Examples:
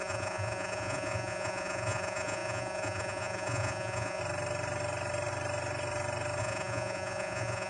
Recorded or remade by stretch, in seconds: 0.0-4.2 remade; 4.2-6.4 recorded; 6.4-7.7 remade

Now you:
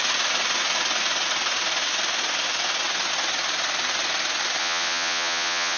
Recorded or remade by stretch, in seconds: 0.0-4.6 recorded; 4.6-5.8 remade

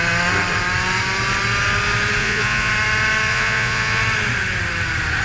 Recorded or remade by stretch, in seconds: 0.0-2.2 recorded; 2.2-2.7 remade; 2.7-3.3 recorded; 3.3-4.0 remade; 4.0-5.2 recorded

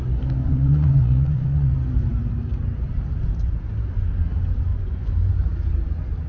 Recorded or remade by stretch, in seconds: 0.0-0.4 recorded; 0.4-1.7 remade; 1.7-4.7 recorded; 4.7-5.3 remade; 5.3-6.3 recorded